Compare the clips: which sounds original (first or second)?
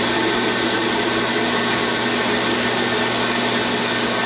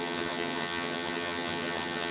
first